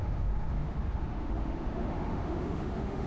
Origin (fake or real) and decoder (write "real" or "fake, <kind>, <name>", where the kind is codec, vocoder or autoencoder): fake, autoencoder, DAC-VAE